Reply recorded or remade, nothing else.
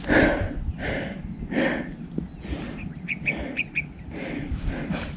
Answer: recorded